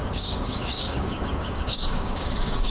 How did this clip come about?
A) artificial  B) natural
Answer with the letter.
A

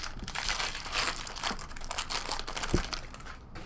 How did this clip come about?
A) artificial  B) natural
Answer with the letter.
B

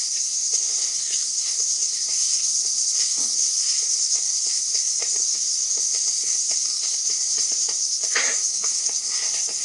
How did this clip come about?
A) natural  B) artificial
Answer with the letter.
B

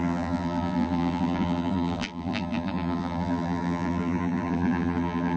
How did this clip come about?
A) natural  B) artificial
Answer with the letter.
B